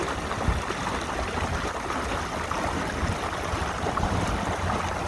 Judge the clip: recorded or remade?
recorded